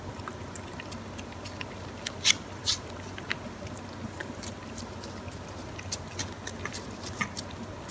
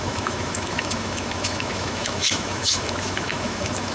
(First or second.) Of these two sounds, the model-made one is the second